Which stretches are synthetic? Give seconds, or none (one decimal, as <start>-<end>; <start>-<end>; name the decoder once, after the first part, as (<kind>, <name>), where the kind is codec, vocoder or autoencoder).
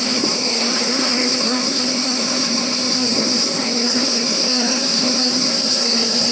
0.0-6.3 (codec, SNAC)